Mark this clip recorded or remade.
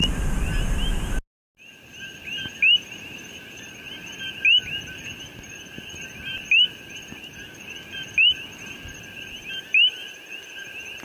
recorded